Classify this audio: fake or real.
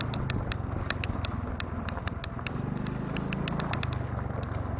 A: real